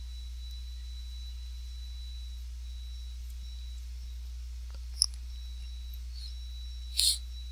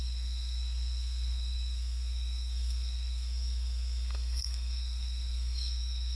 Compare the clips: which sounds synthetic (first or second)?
second